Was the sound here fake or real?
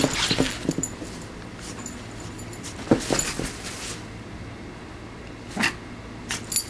real